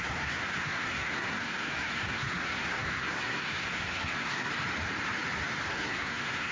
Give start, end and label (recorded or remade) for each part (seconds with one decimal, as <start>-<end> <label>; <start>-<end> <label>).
0.0-4.5 remade; 4.5-5.7 recorded; 5.7-6.5 remade